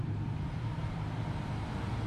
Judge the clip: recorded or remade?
remade